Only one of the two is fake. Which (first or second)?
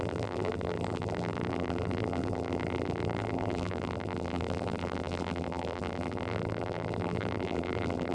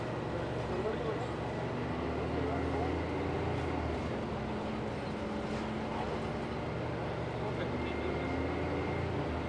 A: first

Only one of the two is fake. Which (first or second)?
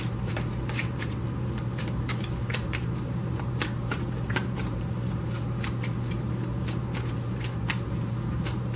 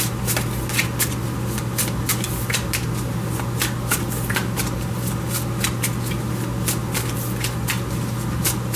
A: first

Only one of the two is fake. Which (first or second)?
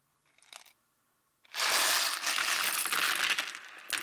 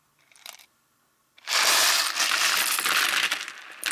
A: second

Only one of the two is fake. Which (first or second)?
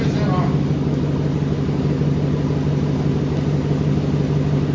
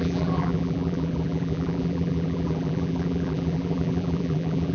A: second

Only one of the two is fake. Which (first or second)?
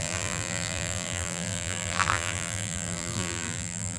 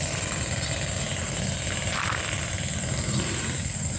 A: first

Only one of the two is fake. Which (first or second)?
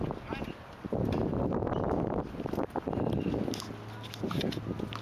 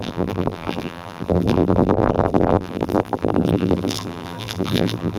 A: second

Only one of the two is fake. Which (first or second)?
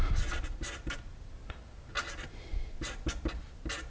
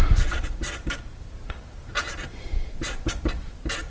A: second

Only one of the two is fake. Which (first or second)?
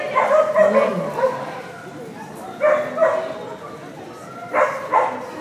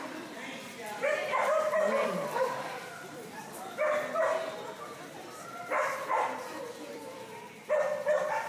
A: second